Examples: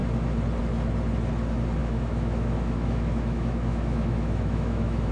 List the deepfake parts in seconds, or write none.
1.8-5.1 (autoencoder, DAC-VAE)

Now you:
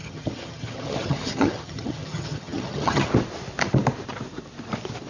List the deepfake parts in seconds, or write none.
0.0-3.1 (vocoder, HiFi-GAN)

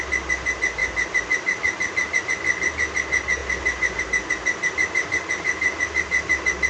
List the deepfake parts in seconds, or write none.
0.8-2.2 (vocoder, BigVGAN v2)

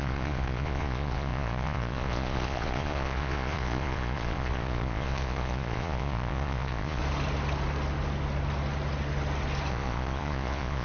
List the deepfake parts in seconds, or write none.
0.0-7.0 (vocoder, Vocos); 9.7-10.8